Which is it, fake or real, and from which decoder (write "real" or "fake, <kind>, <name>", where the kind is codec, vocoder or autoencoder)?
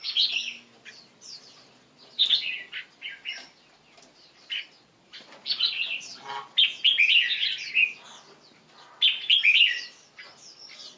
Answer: real